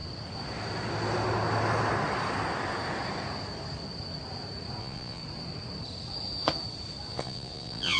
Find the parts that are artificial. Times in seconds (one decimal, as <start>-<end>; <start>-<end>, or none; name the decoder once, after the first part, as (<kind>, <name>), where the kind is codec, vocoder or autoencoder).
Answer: 4.8-5.2 (vocoder, Vocos); 7.1-8.0